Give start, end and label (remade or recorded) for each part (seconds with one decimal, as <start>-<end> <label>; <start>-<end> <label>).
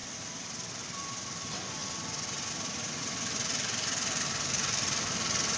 0.0-1.8 remade; 1.8-2.5 recorded; 2.5-5.6 remade